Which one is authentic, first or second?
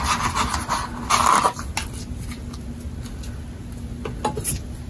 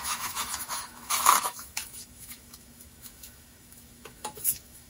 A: first